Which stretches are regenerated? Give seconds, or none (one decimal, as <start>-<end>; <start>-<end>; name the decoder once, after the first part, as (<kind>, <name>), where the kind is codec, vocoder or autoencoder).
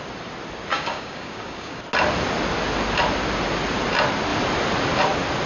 0.7-1.8 (codec, DAC)